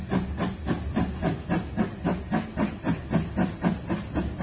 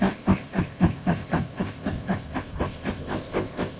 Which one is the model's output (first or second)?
second